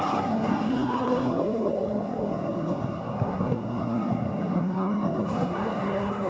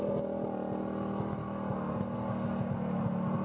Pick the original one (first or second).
second